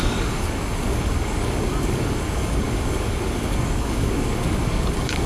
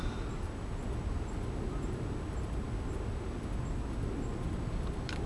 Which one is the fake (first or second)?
first